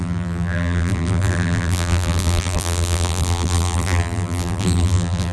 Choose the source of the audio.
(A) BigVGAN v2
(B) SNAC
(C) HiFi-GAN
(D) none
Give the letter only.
A